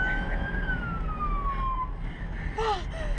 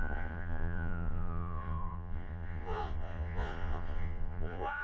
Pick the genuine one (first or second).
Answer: first